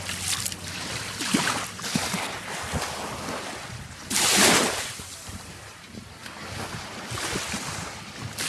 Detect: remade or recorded recorded